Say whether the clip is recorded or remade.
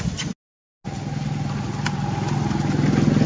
recorded